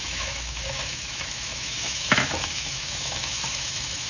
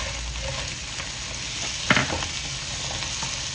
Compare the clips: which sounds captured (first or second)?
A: second